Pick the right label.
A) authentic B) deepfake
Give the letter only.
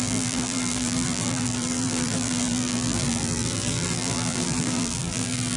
B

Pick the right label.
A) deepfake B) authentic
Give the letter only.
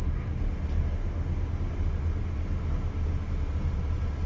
B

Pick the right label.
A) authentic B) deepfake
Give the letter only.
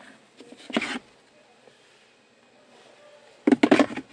A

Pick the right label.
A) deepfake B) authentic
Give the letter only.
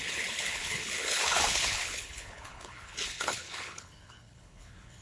A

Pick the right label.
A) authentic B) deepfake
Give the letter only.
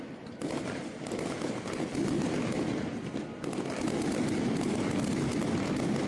A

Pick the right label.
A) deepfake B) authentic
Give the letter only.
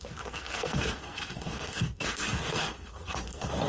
A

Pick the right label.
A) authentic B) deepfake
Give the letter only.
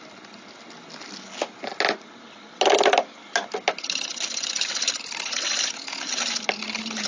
A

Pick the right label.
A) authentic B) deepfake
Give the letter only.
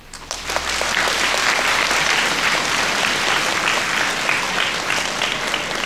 B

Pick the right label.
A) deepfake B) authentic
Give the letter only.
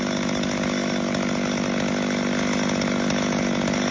B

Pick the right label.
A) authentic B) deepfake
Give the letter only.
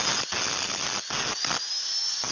A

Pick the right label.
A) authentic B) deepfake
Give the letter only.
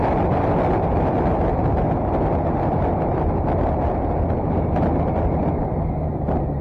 A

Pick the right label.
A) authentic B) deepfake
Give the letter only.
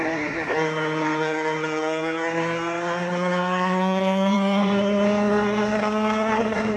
B